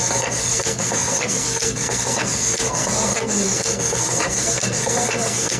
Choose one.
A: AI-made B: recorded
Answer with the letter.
A